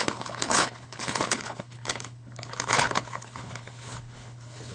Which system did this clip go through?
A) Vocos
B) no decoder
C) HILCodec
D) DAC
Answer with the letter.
C